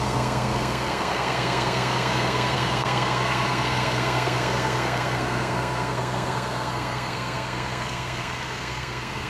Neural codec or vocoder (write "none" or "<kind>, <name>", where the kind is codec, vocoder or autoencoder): codec, SNAC